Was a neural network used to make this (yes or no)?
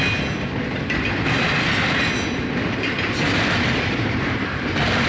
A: no